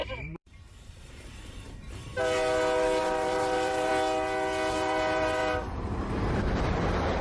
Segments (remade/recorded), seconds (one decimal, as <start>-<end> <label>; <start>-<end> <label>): 0.0-2.1 remade; 2.1-3.0 recorded; 3.0-3.9 remade; 3.9-4.7 recorded; 4.7-7.2 remade